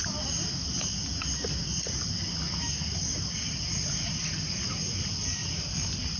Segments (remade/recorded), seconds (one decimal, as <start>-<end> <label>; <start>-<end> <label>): 0.0-6.2 recorded